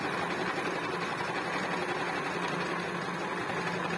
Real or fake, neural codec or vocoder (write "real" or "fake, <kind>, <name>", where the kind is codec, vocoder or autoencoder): real